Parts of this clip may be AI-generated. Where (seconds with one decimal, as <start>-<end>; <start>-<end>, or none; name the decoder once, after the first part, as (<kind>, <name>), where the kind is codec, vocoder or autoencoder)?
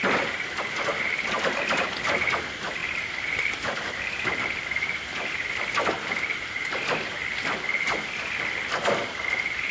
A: 2.8-6.7 (vocoder, BigVGAN v2)